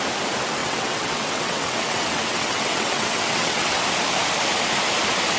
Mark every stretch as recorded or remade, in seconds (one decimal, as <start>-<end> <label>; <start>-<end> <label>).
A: 0.0-0.6 recorded; 0.6-3.8 remade; 3.8-5.4 recorded